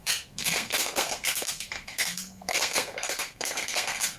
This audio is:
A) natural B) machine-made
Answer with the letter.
B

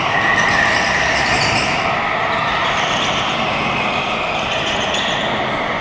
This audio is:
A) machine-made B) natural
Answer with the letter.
B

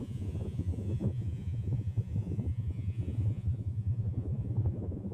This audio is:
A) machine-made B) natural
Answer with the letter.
A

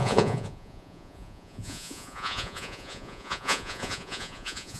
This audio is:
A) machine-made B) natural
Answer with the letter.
A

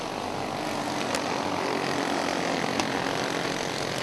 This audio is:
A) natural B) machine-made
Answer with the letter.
A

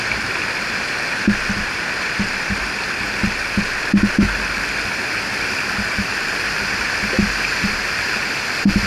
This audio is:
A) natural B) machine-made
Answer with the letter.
A